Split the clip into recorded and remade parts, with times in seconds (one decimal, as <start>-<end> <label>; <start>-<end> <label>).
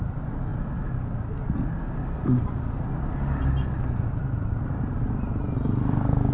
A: 0.0-6.3 recorded